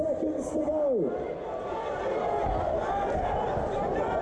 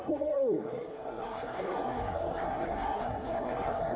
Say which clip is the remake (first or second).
second